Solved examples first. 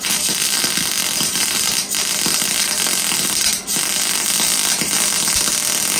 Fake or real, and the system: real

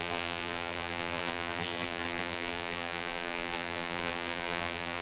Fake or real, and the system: fake, vocoder, BigVGAN v2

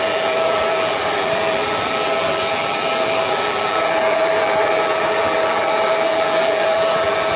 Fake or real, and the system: fake, vocoder, BigVGAN v2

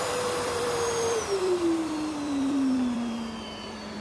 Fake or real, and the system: fake, vocoder, BigVGAN v2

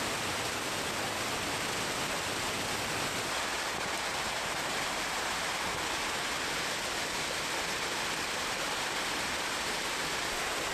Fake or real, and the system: real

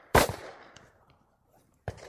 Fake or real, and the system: fake, vocoder, BigVGAN v2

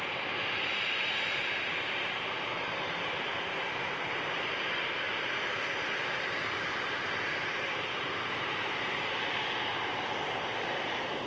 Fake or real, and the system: fake, vocoder, BigVGAN v2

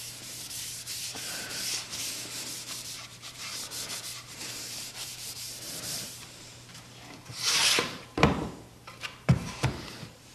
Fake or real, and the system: fake, vocoder, BigVGAN v2